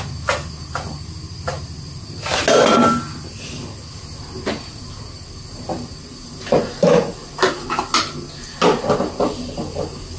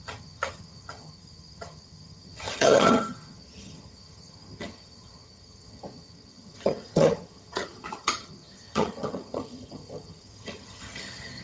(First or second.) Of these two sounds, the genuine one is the first